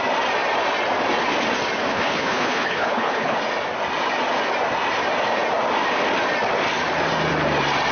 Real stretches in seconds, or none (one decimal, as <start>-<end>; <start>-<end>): 0.0-1.9; 3.4-7.9